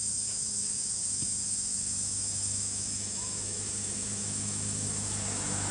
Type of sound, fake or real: fake